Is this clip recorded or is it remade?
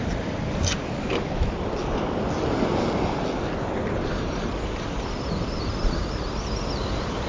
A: remade